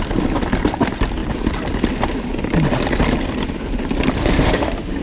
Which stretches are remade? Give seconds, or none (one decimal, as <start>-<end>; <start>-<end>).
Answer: 4.2-5.0